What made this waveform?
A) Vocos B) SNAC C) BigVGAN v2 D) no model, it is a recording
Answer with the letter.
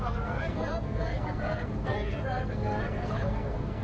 B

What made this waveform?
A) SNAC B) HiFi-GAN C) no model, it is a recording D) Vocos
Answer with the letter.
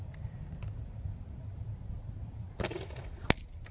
C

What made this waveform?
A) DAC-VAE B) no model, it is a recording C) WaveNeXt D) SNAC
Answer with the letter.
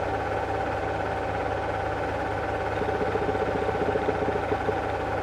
B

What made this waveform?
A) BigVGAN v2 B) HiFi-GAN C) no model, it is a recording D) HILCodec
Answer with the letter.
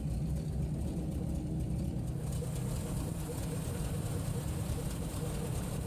A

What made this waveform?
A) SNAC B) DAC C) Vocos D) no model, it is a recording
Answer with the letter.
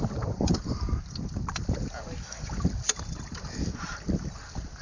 D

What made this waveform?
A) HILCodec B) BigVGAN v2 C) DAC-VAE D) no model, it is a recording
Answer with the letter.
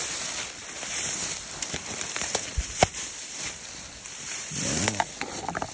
B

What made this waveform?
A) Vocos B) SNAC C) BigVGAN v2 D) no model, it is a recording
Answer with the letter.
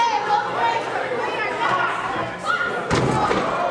D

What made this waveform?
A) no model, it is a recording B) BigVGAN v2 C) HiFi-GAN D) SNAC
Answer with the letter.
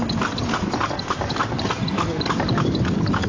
A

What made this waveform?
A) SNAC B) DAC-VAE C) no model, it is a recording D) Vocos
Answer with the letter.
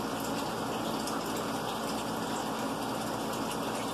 C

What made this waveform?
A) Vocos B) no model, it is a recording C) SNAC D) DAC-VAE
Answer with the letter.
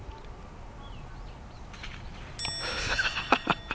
B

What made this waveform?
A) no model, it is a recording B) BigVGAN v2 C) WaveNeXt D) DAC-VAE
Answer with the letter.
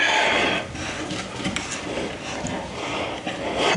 A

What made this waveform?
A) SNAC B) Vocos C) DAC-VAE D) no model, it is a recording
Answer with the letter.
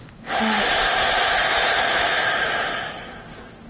D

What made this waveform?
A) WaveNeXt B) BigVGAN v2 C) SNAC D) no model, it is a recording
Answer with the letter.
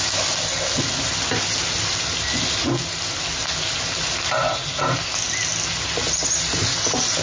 D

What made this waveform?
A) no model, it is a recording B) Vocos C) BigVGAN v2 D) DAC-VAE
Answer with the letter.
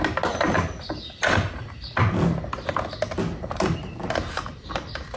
A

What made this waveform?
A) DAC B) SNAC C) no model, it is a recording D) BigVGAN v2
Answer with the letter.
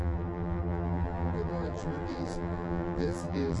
D